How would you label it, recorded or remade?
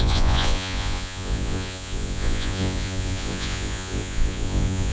remade